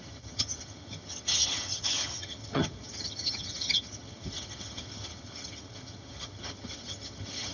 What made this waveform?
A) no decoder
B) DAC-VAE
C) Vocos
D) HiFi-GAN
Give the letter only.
D